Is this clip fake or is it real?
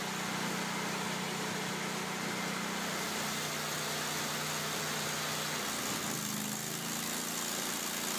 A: real